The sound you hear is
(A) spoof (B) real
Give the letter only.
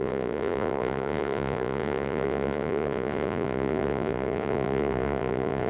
A